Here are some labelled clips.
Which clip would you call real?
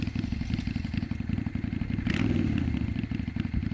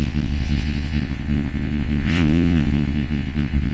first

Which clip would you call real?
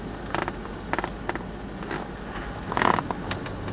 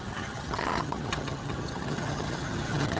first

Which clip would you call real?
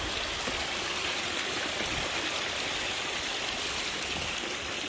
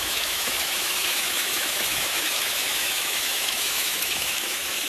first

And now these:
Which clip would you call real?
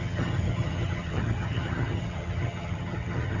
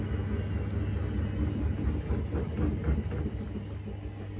second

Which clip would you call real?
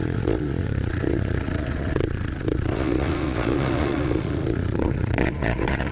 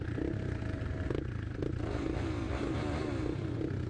second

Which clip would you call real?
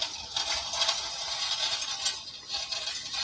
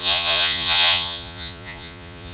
first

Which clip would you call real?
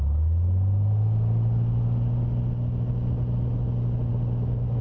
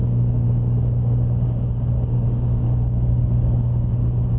first